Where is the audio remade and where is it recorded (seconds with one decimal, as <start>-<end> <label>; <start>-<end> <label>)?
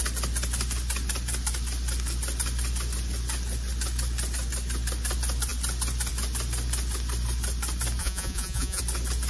0.0-8.0 recorded; 8.0-8.8 remade; 8.8-9.3 recorded